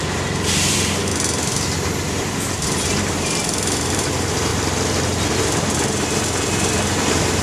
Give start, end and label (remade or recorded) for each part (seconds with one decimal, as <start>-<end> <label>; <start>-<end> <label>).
0.0-1.1 remade; 1.1-2.1 recorded; 2.1-4.5 remade; 4.5-5.4 recorded; 5.4-7.4 remade